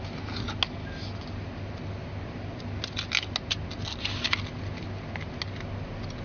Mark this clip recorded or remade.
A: recorded